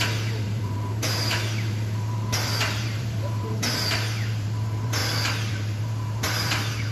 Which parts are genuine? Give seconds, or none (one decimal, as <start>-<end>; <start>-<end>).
5.0-5.5